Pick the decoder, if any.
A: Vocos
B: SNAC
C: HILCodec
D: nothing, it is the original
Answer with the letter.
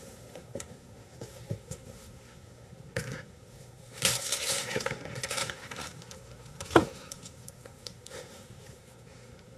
B